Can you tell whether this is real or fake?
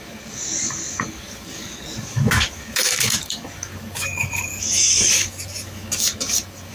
fake